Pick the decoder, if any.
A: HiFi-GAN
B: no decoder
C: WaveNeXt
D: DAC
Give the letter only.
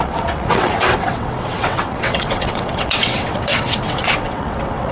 C